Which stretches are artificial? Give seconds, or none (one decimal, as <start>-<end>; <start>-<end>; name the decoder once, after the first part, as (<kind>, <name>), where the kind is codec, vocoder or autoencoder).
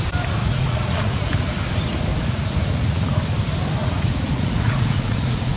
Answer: 0.4-1.3 (vocoder, Vocos); 2.1-3.2; 3.8-5.6